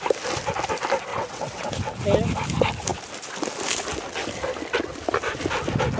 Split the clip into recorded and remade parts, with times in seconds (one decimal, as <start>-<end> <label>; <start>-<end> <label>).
0.0-1.1 recorded; 1.1-1.7 remade; 1.7-6.0 recorded